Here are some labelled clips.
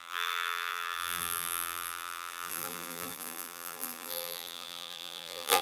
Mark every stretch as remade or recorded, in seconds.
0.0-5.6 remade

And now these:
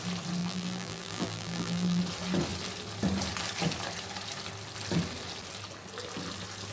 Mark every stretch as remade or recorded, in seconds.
0.0-0.4 recorded; 0.4-2.0 remade; 2.0-6.7 recorded

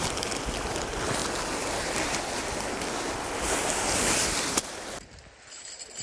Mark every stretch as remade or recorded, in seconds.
0.0-6.0 recorded

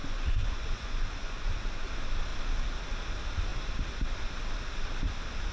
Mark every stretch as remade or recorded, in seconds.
0.0-1.8 remade; 1.8-5.5 recorded

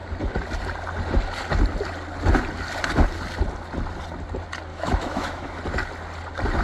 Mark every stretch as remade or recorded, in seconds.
0.0-4.7 recorded; 4.7-5.6 remade; 5.6-6.6 recorded